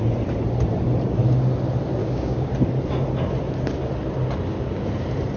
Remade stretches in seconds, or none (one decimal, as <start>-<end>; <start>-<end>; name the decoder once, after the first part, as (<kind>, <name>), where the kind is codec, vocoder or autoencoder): 2.0-2.5 (codec, DAC)